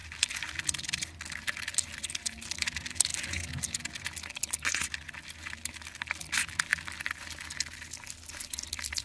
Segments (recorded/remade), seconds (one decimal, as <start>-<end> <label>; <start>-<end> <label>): 0.0-9.0 recorded